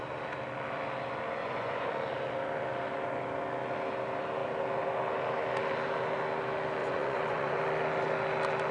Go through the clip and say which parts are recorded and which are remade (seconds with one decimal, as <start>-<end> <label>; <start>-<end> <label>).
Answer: 0.0-1.4 recorded; 1.4-1.9 remade; 1.9-6.8 recorded; 6.8-7.6 remade; 7.6-8.7 recorded